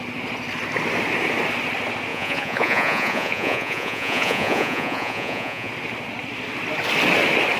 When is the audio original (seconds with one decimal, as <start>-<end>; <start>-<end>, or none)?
0.0-2.1; 5.7-7.6